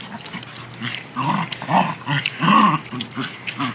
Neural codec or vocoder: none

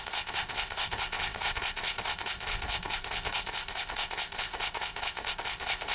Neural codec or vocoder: codec, ZipCodec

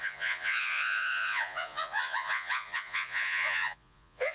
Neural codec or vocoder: vocoder, Vocos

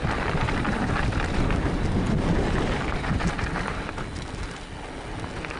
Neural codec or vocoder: none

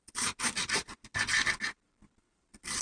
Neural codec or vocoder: none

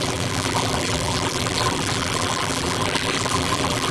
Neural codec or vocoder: vocoder, BigVGAN v2